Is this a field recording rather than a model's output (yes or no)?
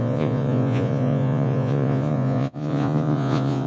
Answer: no